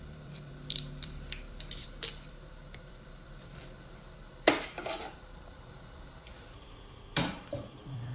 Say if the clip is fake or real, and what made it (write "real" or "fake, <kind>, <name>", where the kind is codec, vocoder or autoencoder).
fake, vocoder, BigVGAN v2